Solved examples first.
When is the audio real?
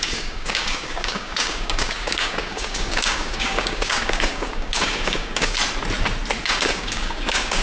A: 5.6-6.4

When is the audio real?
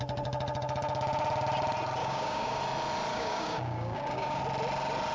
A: 0.0-2.0; 2.6-3.1; 4.4-5.1